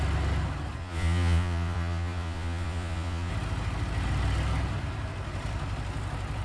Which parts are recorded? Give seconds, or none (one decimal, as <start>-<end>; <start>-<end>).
0.0-0.8; 3.3-6.4